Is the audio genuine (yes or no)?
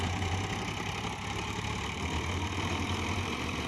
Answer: no